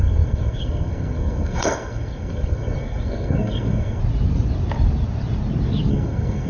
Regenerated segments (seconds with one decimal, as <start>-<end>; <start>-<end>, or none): 0.0-4.0; 5.9-6.5